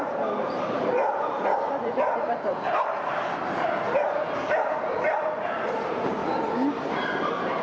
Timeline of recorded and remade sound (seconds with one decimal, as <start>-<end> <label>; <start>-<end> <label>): 0.0-6.2 remade; 6.2-7.0 recorded; 7.0-7.6 remade